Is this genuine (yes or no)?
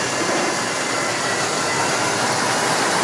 yes